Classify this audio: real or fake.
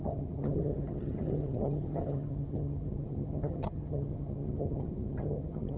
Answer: fake